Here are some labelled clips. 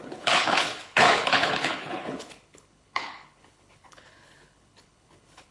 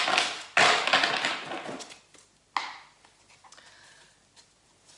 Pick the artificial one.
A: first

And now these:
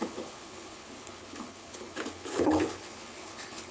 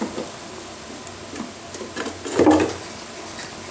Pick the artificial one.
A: first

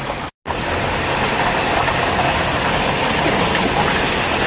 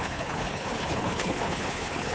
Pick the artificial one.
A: second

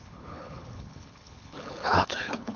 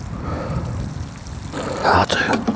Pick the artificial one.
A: first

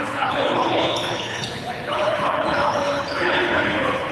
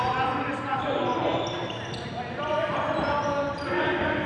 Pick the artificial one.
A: first